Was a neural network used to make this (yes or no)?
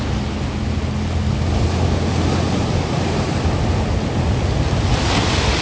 no